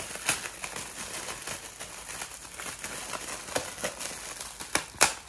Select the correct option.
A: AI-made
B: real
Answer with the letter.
B